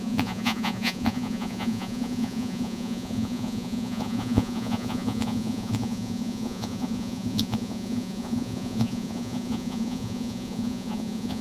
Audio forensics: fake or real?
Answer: fake